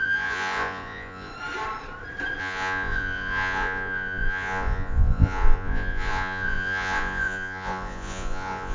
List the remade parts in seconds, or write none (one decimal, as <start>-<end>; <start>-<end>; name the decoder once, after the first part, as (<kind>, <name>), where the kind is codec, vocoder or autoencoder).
0.0-1.3 (vocoder, Vocos); 2.4-8.7